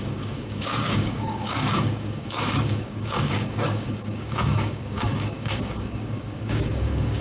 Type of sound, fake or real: fake